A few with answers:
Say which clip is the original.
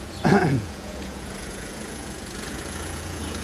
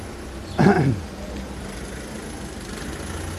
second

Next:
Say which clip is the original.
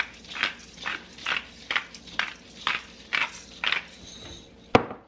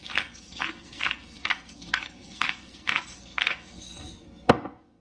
first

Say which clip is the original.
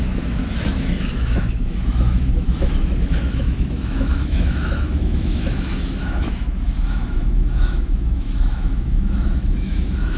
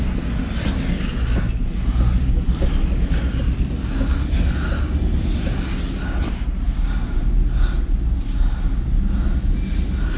second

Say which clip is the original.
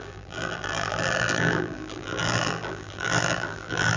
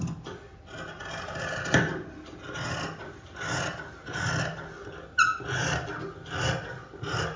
second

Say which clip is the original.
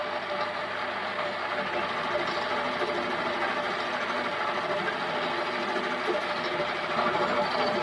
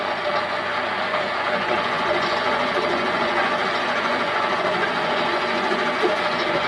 first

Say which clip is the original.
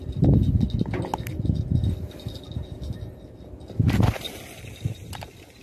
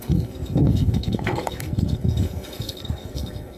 first